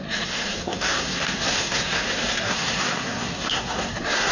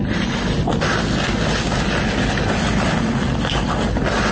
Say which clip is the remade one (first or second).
first